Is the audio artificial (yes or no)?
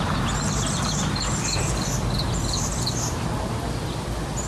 no